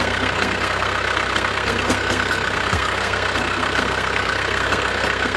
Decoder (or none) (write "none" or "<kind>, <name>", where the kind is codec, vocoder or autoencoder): codec, SNAC